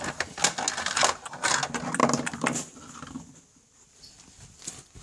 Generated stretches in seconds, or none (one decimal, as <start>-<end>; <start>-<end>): none